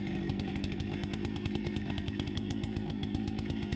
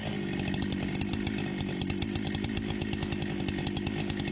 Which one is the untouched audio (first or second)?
second